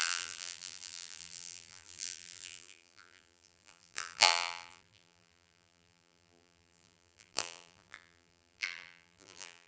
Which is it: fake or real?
fake